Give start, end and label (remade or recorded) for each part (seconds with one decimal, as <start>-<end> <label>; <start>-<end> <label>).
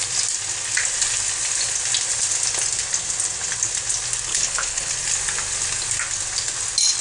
0.0-4.3 recorded; 4.3-4.9 remade; 4.9-7.0 recorded